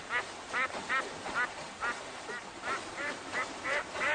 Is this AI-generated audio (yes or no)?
no